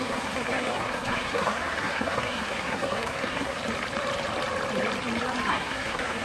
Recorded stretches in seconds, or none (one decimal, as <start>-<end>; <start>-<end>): 3.6-5.5